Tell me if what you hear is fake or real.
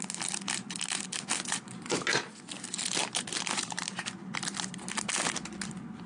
real